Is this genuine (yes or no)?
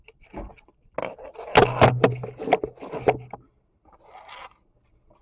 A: yes